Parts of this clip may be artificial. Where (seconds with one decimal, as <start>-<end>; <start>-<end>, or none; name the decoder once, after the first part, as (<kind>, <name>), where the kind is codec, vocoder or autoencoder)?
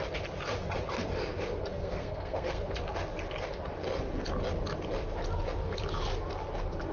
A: 1.7-2.7 (codec, SNAC)